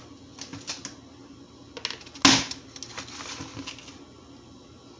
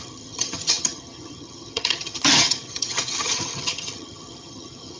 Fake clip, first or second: second